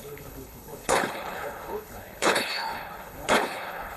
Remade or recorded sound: remade